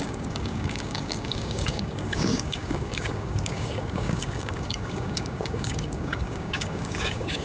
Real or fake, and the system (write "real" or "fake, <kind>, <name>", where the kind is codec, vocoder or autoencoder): fake, codec, DAC